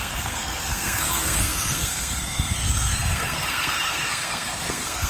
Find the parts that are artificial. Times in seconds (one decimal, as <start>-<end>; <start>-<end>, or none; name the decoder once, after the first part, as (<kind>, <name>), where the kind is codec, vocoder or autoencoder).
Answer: 0.0-5.1 (codec, SNAC)